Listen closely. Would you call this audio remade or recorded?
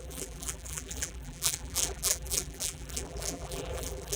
remade